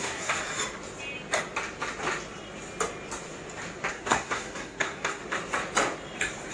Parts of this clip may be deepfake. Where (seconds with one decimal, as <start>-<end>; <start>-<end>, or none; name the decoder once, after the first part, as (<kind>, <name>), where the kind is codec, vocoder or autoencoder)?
0.0-0.4 (codec, SNAC); 3.9-5.2